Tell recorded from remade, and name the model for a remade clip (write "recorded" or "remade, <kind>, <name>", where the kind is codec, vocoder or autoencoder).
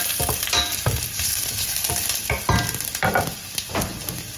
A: recorded